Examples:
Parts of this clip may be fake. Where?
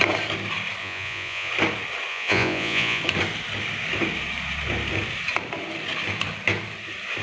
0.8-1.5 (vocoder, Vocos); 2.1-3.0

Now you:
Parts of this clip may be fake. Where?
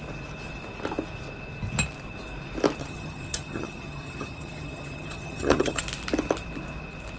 2.8-5.8 (vocoder, HiFi-GAN)